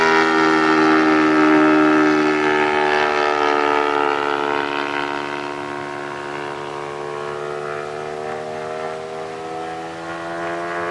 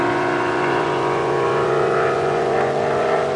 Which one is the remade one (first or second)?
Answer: second